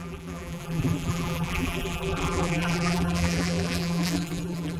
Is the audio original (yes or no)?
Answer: no